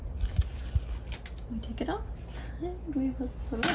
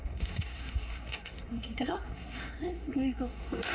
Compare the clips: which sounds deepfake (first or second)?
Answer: second